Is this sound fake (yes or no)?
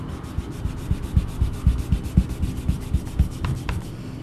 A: no